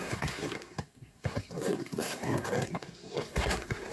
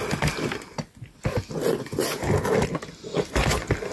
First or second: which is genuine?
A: second